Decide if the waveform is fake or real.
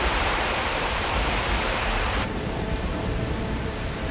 fake